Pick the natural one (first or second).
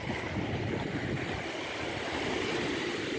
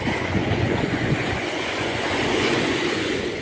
first